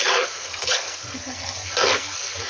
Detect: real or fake fake